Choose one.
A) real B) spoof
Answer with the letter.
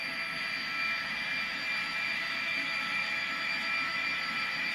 A